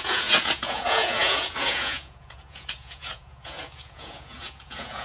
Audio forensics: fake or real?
fake